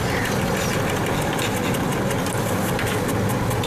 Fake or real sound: real